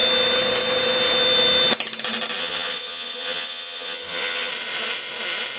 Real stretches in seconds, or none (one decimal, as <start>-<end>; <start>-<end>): 0.0-2.4; 4.5-5.6